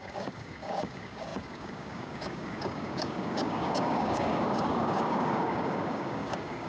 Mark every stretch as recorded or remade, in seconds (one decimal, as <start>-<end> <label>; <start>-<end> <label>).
0.0-6.7 remade